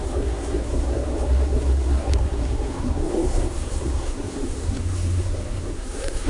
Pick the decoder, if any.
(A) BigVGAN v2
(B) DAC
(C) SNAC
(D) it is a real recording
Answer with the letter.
C